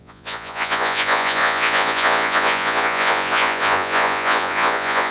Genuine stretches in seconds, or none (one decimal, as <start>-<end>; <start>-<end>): none